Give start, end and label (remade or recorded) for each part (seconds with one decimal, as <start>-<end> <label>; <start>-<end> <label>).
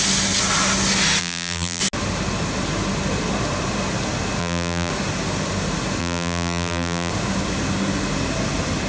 0.0-1.2 recorded; 1.2-1.8 remade; 1.8-4.4 recorded; 4.4-4.9 remade; 4.9-6.0 recorded; 6.0-7.1 remade; 7.1-8.9 recorded